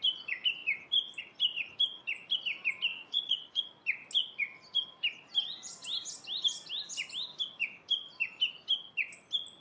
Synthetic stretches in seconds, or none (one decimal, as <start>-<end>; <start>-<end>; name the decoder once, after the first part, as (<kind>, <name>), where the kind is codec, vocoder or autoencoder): 2.9-3.6 (vocoder, Vocos)